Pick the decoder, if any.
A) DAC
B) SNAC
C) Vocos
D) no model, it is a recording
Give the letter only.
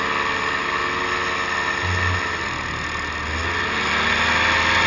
D